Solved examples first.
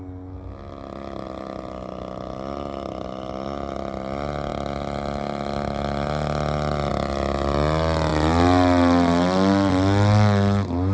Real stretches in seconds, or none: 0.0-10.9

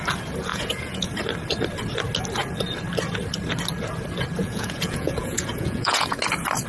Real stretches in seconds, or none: 0.0-0.5; 1.1-4.4; 6.2-6.7